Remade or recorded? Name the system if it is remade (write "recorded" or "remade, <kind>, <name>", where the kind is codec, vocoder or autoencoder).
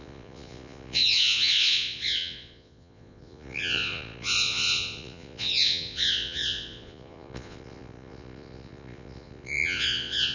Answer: remade, vocoder, Vocos